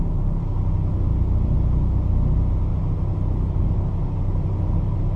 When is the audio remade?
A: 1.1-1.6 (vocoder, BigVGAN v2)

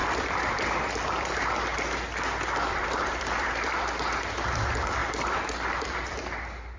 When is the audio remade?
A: 0.0-1.7 (vocoder, BigVGAN v2); 3.0-5.0; 5.8-6.8